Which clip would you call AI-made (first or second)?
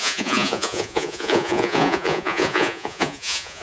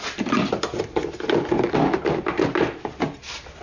first